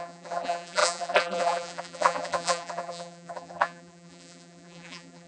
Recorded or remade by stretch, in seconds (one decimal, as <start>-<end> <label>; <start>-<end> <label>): 0.0-5.3 remade